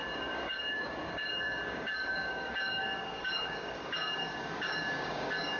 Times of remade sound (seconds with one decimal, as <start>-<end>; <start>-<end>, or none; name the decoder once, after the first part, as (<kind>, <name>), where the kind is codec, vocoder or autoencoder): 0.0-5.6 (codec, DAC)